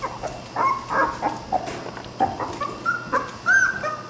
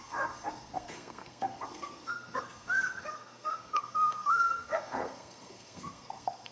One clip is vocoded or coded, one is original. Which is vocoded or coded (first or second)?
second